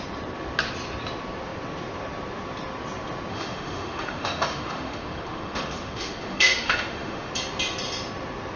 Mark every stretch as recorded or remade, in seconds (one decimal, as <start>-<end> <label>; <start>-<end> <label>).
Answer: 0.0-3.3 recorded; 3.3-7.3 remade; 7.3-8.6 recorded